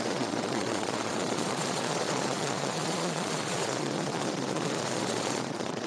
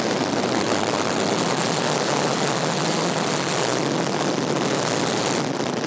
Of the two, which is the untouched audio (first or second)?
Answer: second